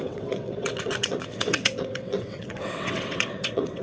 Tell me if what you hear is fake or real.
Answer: fake